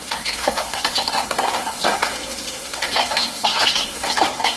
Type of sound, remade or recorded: remade